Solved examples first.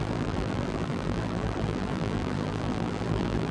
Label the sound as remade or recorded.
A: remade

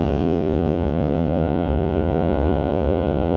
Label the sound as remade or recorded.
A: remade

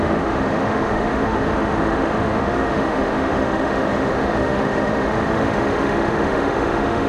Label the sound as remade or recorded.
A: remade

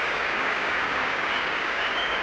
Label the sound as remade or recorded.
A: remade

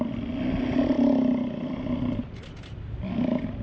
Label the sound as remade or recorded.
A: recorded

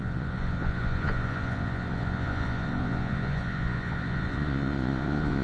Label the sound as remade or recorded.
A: remade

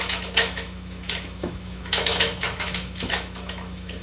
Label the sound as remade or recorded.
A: remade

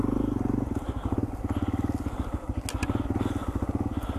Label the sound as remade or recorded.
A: recorded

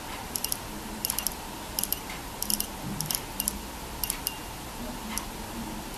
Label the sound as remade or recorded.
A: recorded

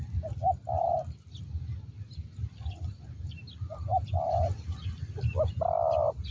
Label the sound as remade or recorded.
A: recorded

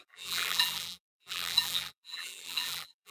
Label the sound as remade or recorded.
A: remade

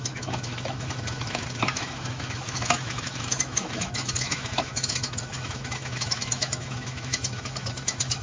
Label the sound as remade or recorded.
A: remade